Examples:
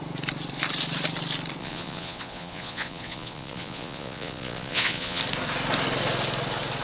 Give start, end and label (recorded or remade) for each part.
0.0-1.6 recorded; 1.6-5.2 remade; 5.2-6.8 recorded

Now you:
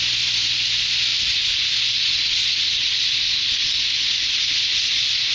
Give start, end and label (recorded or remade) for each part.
0.0-1.1 recorded; 1.1-3.8 remade; 3.8-4.2 recorded; 4.2-5.3 remade

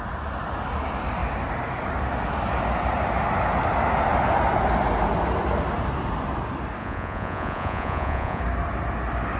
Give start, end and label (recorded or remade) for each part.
0.0-6.8 recorded; 6.8-8.4 remade; 8.4-9.4 recorded

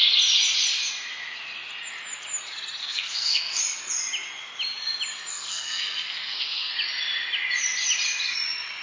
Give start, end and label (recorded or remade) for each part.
0.0-2.8 recorded; 2.8-3.6 remade; 3.6-5.3 recorded; 5.3-6.7 remade; 6.7-8.8 recorded